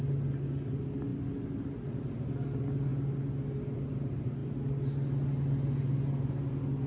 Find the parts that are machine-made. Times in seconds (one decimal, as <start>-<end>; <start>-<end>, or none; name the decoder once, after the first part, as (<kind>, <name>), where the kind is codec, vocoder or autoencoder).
none